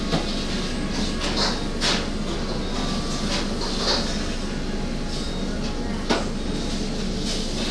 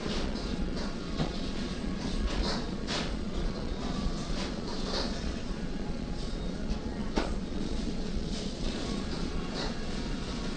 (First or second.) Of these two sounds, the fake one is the second